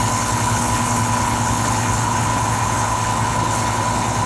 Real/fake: fake